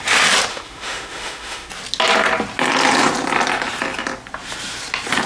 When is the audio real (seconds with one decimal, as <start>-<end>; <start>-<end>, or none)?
0.0-0.5; 1.7-5.3